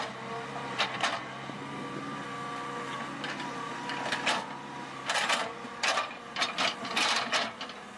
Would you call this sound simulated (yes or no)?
no